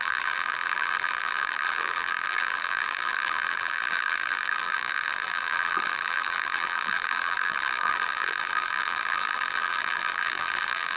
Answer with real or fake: fake